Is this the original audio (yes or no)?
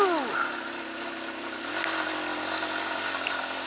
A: yes